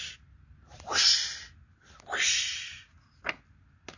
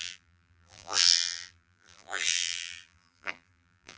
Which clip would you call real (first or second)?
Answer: first